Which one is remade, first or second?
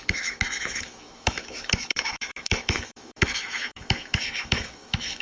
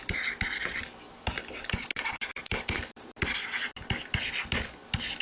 first